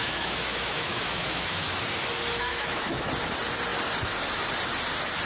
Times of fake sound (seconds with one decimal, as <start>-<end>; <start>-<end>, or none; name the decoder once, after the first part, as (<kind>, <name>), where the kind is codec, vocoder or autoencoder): 0.0-1.7 (autoencoder, DAC-VAE); 2.5-3.1